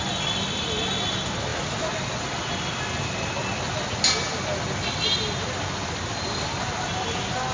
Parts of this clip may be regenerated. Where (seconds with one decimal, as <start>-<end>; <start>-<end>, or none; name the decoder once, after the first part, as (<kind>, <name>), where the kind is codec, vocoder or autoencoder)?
none